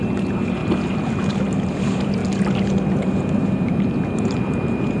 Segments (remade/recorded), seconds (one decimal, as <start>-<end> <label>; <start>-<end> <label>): 0.0-0.6 remade; 0.6-1.3 recorded; 1.3-2.2 remade; 2.2-2.9 recorded; 2.9-5.0 remade